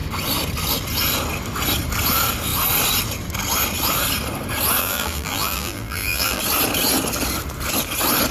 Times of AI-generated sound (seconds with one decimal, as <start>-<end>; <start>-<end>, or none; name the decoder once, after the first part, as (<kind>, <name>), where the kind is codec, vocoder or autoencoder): 4.8-6.4 (vocoder, BigVGAN v2)